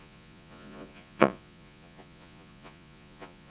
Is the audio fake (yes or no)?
yes